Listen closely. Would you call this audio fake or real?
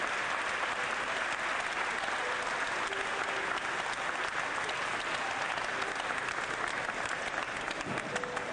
real